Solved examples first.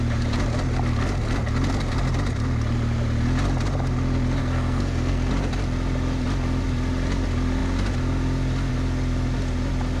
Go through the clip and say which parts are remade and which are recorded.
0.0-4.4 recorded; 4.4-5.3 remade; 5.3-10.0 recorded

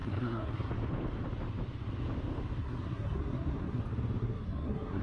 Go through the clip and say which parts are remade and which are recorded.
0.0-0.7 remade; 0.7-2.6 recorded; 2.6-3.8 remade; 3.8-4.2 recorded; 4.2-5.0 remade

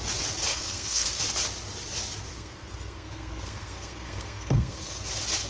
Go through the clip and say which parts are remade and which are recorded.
0.0-0.5 recorded; 0.5-1.2 remade; 1.2-2.3 recorded; 2.3-5.0 remade; 5.0-5.5 recorded

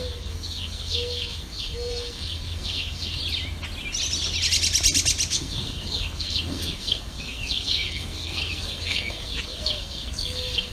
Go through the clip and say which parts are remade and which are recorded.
0.0-3.2 remade; 3.2-5.3 recorded; 5.3-10.7 remade